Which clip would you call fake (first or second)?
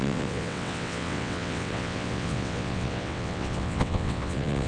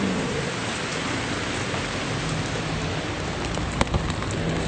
first